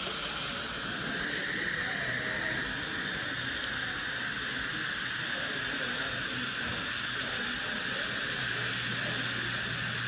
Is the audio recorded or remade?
recorded